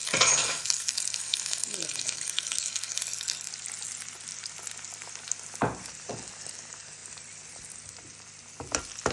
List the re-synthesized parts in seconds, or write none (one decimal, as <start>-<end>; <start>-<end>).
0.0-3.5